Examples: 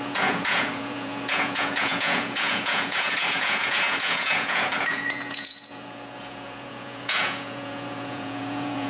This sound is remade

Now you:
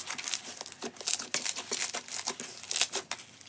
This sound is recorded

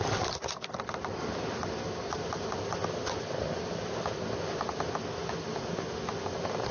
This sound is recorded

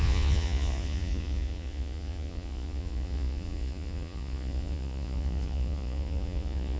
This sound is remade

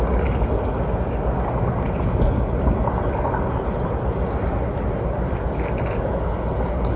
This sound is recorded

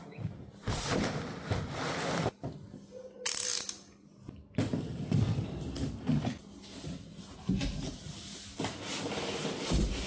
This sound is recorded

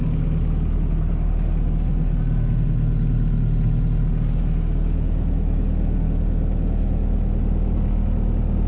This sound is recorded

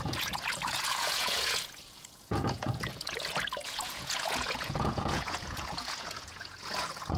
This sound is remade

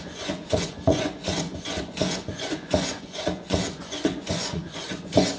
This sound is remade